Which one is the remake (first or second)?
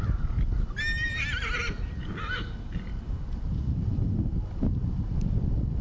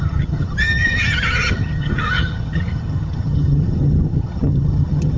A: second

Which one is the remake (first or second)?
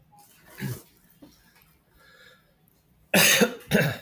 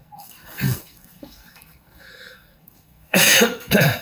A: second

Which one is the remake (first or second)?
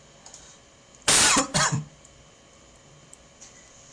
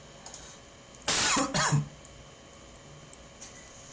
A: first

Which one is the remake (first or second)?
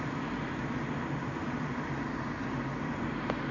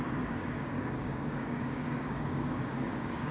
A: second